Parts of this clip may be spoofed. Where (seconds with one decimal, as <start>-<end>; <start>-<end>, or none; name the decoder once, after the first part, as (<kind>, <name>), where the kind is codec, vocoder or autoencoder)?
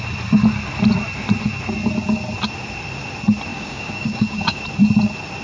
3.5-4.6 (codec, DAC)